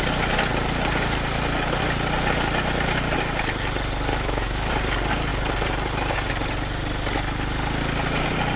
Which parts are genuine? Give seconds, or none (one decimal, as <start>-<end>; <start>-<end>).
0.0-4.1; 4.7-8.6